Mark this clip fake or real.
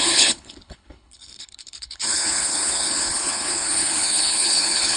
fake